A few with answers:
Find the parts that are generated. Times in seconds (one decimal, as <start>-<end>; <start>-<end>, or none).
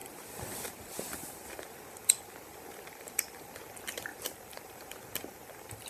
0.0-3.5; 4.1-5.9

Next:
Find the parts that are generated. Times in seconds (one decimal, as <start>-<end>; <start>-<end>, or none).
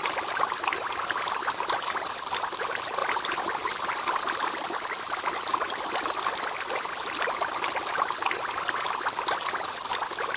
0.0-2.6; 3.0-5.9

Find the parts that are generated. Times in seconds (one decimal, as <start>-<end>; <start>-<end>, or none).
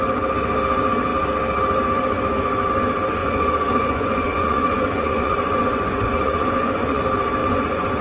3.2-7.0; 7.4-8.0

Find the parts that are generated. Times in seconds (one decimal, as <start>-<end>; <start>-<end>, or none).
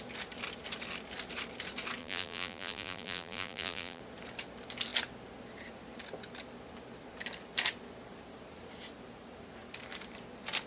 2.0-4.0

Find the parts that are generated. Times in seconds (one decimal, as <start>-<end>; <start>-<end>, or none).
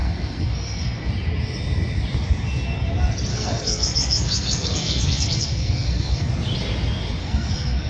0.0-1.1; 3.3-6.3; 7.2-7.9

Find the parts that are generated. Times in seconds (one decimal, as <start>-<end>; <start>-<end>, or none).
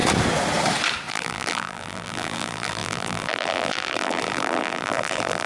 1.1-5.5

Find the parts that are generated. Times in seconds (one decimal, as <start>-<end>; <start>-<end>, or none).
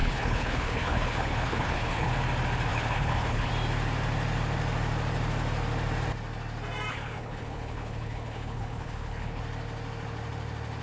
0.0-2.1; 2.7-3.5; 6.9-9.4